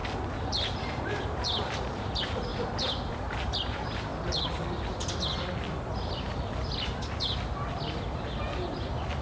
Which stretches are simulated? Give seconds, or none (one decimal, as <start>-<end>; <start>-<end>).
1.0-2.5; 3.1-4.1